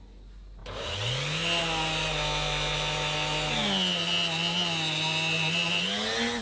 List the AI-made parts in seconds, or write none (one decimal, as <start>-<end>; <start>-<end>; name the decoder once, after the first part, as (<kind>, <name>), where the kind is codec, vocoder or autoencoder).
none